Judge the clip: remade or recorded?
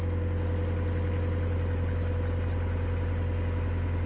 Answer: recorded